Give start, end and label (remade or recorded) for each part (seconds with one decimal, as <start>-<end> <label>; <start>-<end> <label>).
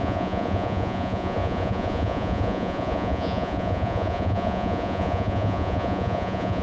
0.0-6.6 remade